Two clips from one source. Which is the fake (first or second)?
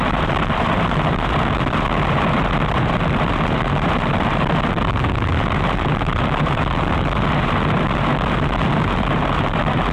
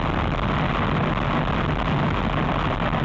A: first